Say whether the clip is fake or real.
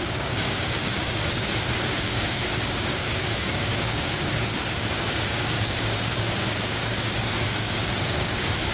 fake